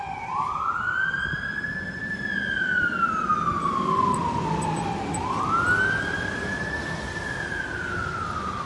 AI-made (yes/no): no